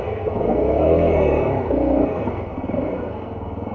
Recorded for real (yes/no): no